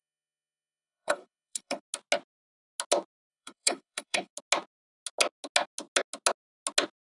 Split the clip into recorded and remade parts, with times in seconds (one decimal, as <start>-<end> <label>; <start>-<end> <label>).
0.0-1.8 remade; 1.8-3.3 recorded; 3.3-4.3 remade; 4.3-7.1 recorded